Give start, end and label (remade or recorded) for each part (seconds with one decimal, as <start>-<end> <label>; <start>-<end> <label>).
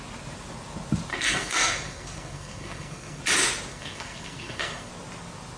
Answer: 0.0-1.1 recorded; 1.1-3.2 remade; 3.2-3.7 recorded; 3.7-4.9 remade; 4.9-5.6 recorded